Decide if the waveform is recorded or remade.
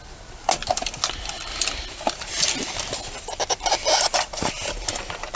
recorded